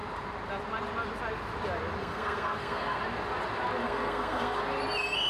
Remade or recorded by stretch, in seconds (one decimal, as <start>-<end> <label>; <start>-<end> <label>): 0.0-2.0 recorded; 2.0-3.0 remade; 3.0-3.8 recorded; 3.8-4.6 remade; 4.6-5.3 recorded